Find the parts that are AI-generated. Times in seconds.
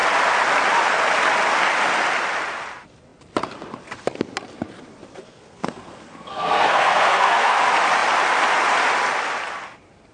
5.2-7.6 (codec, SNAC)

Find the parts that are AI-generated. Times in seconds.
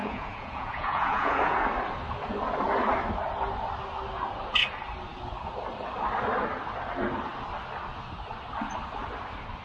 0.0-1.7 (vocoder, Vocos)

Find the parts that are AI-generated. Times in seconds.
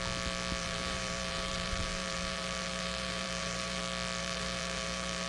0.6-3.8 (vocoder, BigVGAN v2); 4.2-5.3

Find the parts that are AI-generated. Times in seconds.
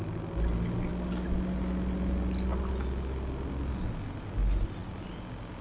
none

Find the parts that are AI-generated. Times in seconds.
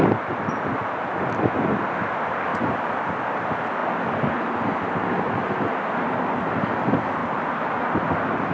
2.5-3.0 (vocoder, BigVGAN v2); 7.2-8.0